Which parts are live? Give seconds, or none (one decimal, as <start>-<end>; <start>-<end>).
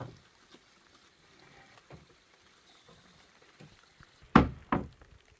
0.0-5.4